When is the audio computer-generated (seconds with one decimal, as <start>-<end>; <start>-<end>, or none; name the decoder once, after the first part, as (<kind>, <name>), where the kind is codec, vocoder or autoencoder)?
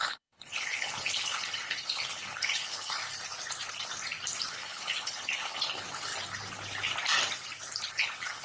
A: 0.0-3.0 (codec, HILCodec); 4.5-6.1; 7.9-8.4